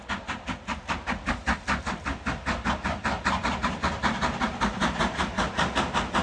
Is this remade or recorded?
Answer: recorded